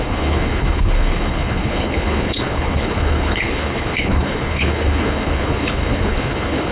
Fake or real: fake